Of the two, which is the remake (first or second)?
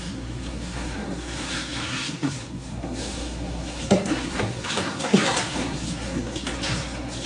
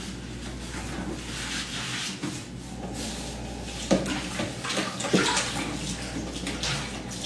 first